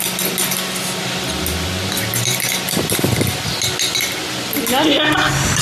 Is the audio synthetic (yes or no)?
no